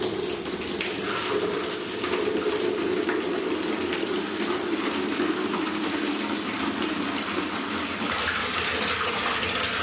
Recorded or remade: recorded